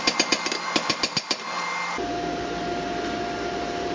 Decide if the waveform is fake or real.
real